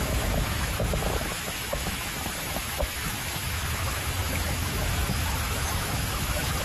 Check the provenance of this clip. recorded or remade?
remade